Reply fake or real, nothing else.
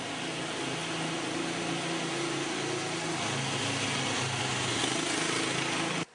real